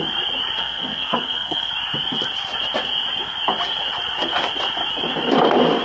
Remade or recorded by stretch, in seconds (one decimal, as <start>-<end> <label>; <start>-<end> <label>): 0.0-0.6 recorded; 0.6-1.7 remade; 1.7-5.8 recorded